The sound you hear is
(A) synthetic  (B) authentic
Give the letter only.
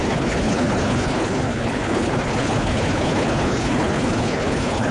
A